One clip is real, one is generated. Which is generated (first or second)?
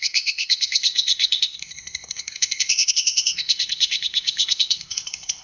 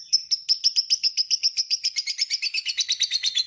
first